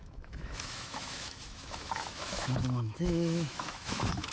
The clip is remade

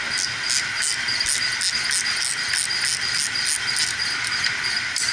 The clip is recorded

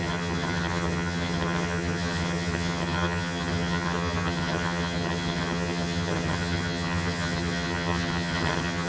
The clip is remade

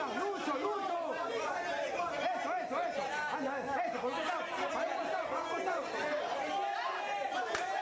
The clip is recorded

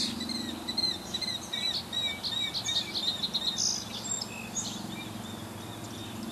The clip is recorded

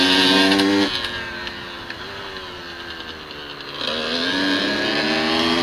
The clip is recorded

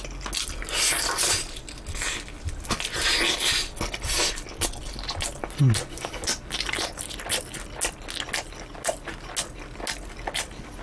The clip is recorded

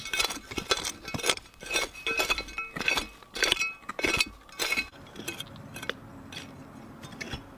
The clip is recorded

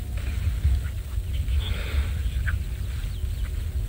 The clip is recorded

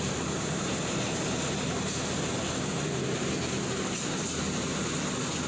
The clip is recorded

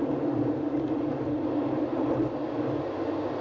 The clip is recorded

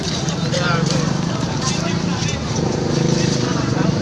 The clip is remade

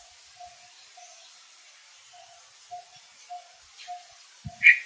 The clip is recorded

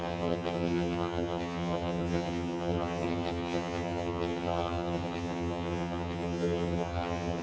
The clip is remade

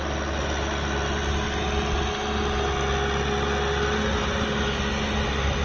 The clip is recorded